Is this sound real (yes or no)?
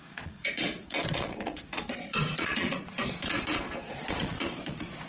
no